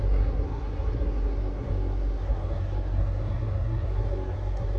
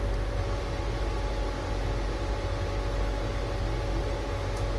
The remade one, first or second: first